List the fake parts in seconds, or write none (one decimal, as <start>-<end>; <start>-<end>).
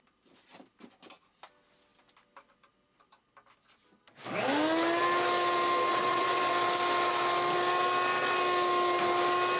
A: 5.9-6.5